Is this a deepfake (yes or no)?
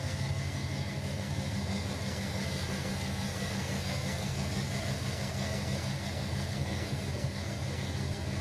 yes